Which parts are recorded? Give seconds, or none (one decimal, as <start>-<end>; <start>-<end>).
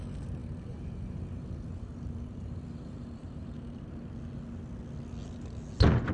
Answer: 0.0-0.4; 4.1-6.1